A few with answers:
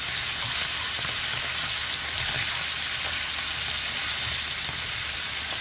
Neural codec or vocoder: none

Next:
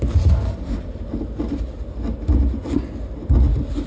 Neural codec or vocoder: none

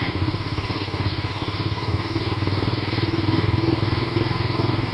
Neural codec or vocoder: codec, DAC